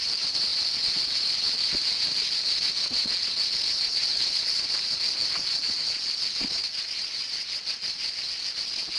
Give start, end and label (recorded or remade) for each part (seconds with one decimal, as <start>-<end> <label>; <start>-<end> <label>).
0.0-4.1 recorded; 4.1-4.6 remade; 4.6-9.0 recorded